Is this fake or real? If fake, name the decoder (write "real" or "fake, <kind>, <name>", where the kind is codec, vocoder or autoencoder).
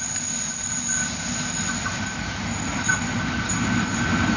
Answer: real